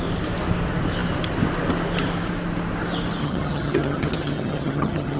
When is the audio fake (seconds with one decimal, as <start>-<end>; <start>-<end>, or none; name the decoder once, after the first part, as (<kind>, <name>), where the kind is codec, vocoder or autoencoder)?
3.2-5.2 (vocoder, HiFi-GAN)